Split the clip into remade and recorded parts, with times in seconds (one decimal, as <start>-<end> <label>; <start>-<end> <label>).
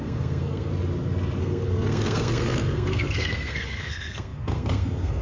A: 0.0-0.7 remade; 0.7-1.4 recorded; 1.4-5.2 remade